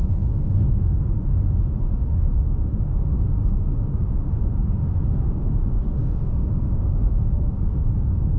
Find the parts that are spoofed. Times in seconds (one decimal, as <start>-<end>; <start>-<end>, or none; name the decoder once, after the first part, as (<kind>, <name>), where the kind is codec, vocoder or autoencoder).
0.0-8.4 (autoencoder, DAC-VAE)